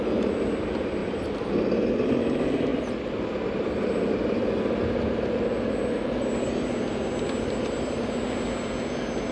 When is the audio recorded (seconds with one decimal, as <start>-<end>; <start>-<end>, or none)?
0.0-9.3